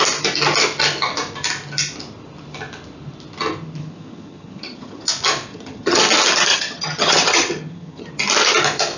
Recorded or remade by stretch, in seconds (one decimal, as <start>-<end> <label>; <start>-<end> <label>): 0.0-3.8 recorded; 3.8-5.1 remade; 5.1-5.5 recorded; 5.5-6.0 remade; 6.0-6.5 recorded; 6.5-8.1 remade; 8.1-9.0 recorded